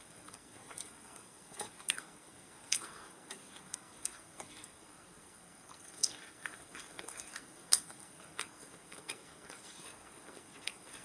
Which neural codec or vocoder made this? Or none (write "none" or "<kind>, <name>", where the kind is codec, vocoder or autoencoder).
codec, SNAC